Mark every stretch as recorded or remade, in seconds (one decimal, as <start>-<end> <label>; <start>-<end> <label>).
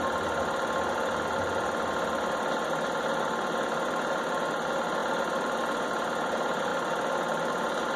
0.0-8.0 recorded